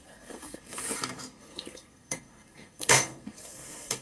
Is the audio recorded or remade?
remade